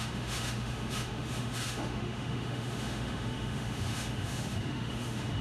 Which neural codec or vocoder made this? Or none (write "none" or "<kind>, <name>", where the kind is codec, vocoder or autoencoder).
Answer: autoencoder, DAC-VAE